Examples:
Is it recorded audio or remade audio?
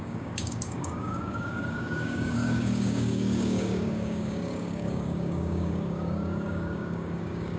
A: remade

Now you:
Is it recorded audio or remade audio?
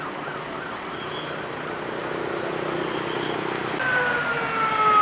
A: recorded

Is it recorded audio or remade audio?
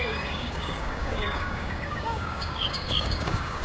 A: remade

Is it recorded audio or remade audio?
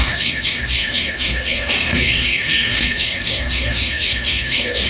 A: remade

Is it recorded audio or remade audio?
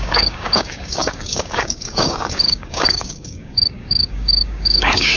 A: remade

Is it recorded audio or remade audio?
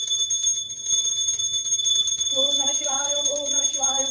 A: recorded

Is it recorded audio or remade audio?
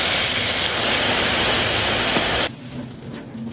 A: recorded